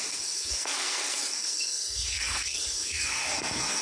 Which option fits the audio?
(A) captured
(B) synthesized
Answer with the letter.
B